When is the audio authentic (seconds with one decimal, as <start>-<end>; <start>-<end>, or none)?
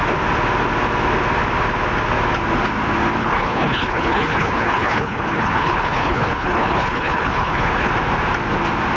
0.0-3.2; 7.9-9.0